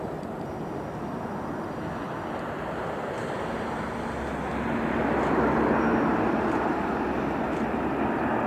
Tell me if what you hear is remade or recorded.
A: recorded